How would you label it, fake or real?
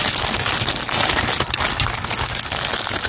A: real